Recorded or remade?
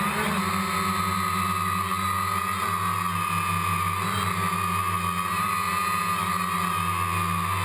recorded